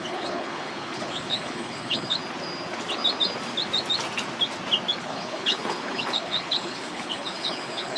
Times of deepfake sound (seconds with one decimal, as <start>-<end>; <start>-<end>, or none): 0.0-2.2; 5.0-8.0